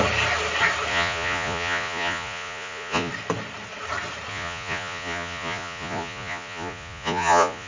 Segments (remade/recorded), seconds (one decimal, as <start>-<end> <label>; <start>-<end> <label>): 0.0-0.9 recorded; 0.9-3.1 remade; 3.1-4.3 recorded; 4.3-7.7 remade